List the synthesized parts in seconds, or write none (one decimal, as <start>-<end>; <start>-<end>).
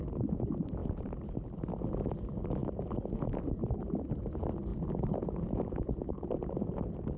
4.7-6.8